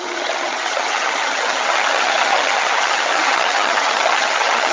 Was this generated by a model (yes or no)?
yes